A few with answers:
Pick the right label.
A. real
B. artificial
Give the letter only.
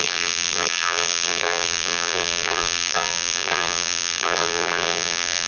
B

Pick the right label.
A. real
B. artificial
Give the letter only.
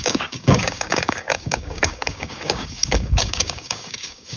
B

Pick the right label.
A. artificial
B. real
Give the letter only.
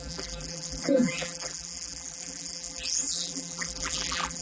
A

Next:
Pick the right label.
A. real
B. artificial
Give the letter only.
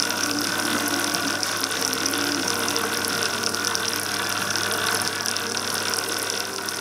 A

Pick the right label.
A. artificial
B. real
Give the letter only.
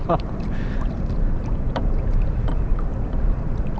A